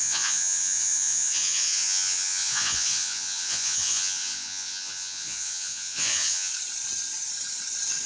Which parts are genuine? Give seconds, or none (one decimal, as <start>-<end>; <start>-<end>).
6.5-8.1